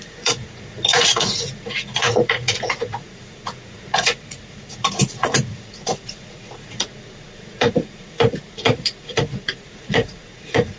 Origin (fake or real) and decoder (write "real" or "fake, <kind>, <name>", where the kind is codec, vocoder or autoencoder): fake, vocoder, Vocos